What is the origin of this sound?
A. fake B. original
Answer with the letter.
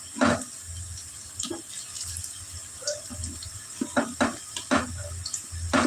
B